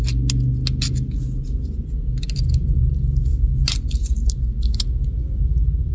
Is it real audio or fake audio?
real